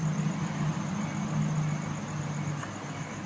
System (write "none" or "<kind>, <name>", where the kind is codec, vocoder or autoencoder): none